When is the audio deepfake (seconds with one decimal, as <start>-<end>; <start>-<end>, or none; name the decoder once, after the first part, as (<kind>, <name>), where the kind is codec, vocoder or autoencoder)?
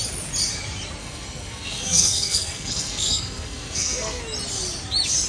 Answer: 1.0-4.2 (codec, SNAC)